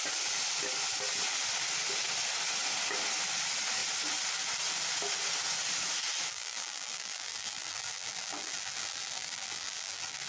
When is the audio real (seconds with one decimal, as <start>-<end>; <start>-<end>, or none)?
0.0-6.3